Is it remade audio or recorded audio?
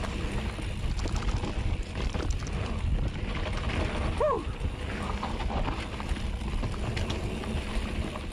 recorded